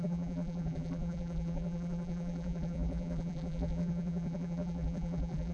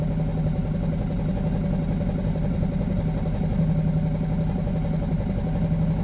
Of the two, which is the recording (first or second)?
second